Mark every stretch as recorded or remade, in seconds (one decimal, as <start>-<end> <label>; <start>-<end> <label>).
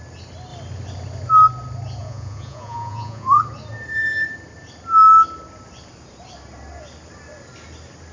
0.0-2.0 recorded; 2.0-3.4 remade; 3.4-8.1 recorded